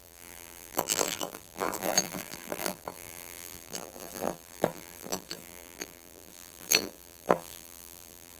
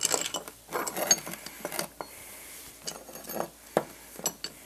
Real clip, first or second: second